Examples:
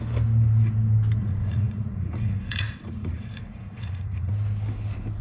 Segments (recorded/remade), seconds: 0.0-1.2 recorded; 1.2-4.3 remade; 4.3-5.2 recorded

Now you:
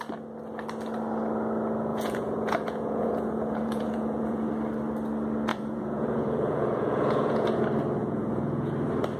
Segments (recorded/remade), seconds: 0.0-1.9 recorded; 1.9-4.5 remade; 4.5-5.5 recorded; 5.5-7.6 remade; 7.6-8.0 recorded; 8.0-8.7 remade; 8.7-9.2 recorded

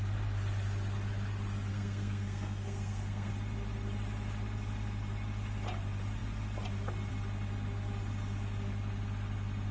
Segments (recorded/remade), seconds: 0.0-1.7 recorded; 1.7-3.3 remade; 3.3-9.7 recorded

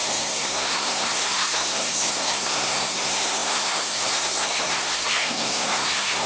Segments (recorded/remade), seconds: 0.0-6.3 remade

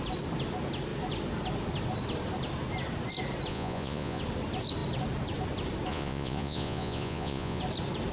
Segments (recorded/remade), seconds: 0.0-3.5 recorded; 3.5-4.2 remade; 4.2-5.9 recorded; 5.9-7.6 remade; 7.6-8.1 recorded

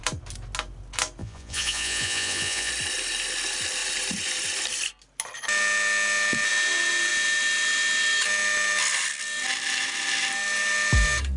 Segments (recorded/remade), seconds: 0.0-1.2 recorded; 1.2-2.7 remade; 2.7-11.4 recorded

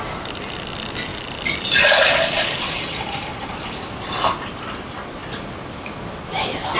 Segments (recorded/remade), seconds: 0.0-1.1 recorded; 1.1-2.8 remade; 2.8-3.3 recorded; 3.3-4.0 remade; 4.0-5.2 recorded; 5.2-6.1 remade; 6.1-6.8 recorded

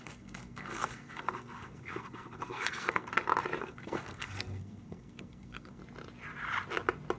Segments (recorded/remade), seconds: 0.0-3.1 remade; 3.1-3.6 recorded; 3.6-5.8 remade; 5.8-7.2 recorded